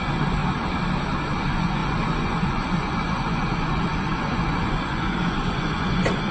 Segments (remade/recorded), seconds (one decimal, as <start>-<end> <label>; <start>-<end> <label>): 0.0-0.4 remade; 0.4-1.4 recorded; 1.4-6.3 remade